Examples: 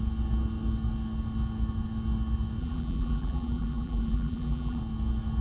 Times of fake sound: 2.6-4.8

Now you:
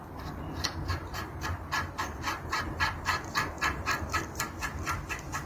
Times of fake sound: 0.9-4.2

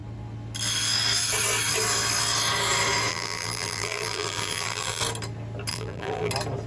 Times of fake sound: 3.1-5.0; 5.7-6.3

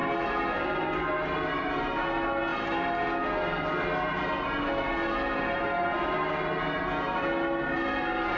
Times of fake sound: none

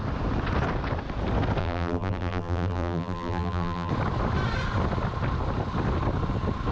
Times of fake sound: 1.6-3.9

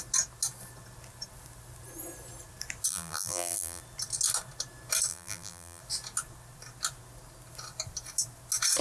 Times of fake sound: 2.9-3.8; 5.1-5.8